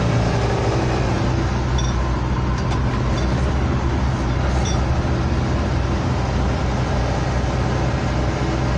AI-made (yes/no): no